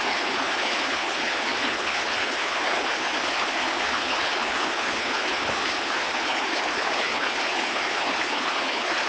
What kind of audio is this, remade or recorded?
remade